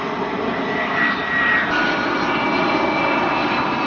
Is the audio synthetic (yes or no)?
no